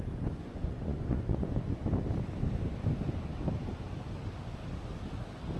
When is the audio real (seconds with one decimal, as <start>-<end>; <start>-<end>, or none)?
0.0-0.4; 1.8-5.6